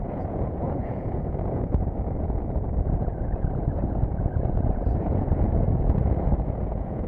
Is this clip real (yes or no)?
no